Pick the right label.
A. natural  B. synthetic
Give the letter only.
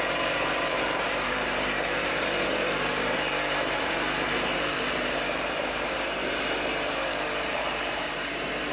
B